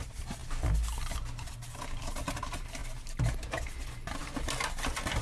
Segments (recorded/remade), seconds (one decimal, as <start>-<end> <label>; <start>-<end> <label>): 0.0-5.2 recorded

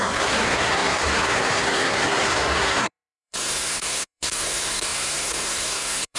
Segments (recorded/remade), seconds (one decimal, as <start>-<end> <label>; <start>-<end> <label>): 0.0-6.2 remade

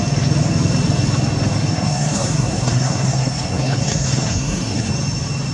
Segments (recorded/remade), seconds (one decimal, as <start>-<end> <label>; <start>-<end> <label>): 0.0-1.6 recorded; 1.6-4.9 remade; 4.9-5.5 recorded